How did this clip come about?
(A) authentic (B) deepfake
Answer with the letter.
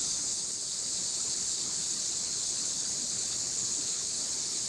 B